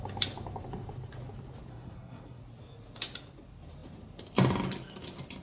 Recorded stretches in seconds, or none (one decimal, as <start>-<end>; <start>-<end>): 0.0-1.7; 2.4-5.4